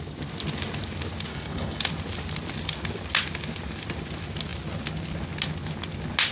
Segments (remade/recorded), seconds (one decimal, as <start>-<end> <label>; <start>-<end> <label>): 0.0-1.3 recorded; 1.3-1.8 remade; 1.8-6.3 recorded